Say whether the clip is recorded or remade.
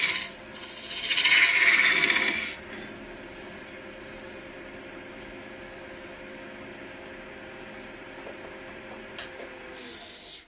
recorded